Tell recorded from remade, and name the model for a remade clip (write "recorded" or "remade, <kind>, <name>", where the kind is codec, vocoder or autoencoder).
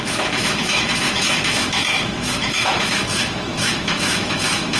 remade, autoencoder, DAC-VAE